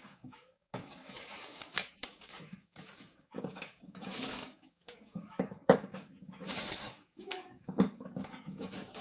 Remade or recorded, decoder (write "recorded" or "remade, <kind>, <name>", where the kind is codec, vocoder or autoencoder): remade, codec, DAC